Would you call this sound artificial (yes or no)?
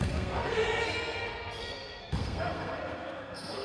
yes